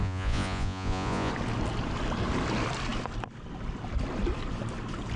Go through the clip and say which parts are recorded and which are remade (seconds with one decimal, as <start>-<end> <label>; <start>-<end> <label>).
0.0-1.3 remade; 1.3-5.2 recorded